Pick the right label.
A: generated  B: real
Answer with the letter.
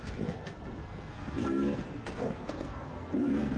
A